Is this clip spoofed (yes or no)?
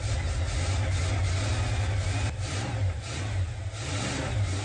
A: no